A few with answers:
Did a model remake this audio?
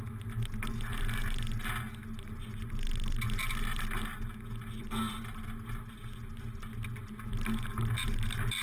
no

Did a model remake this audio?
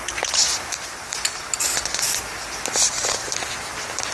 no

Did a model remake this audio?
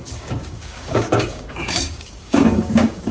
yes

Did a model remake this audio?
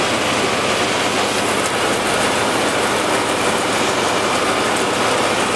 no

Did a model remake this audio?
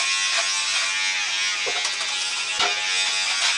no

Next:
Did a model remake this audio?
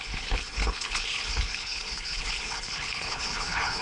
yes